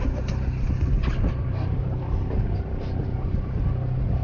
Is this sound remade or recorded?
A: recorded